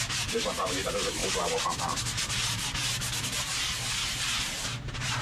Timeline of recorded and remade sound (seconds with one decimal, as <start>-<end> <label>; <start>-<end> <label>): 0.0-5.2 remade